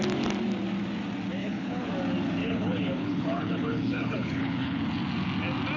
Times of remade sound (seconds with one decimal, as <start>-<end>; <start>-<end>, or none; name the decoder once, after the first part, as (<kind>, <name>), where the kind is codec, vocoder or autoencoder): 1.4-1.9 (codec, HILCodec); 2.4-4.8